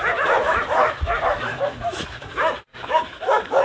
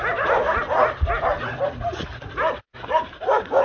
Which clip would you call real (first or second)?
second